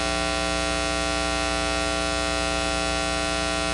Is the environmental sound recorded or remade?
recorded